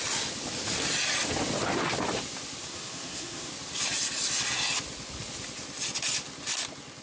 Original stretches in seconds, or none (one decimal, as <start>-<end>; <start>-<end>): 0.0-2.6; 3.5-7.0